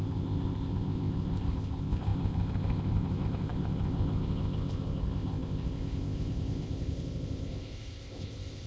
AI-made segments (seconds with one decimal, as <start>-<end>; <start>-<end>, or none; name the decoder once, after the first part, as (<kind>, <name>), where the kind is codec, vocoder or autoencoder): 0.0-8.7 (codec, ZipCodec)